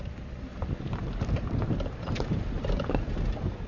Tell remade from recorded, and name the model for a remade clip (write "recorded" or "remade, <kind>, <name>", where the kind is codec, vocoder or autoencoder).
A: remade, vocoder, BigVGAN v2